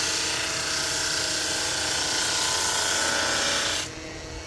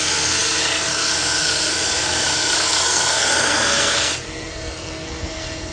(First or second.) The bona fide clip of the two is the first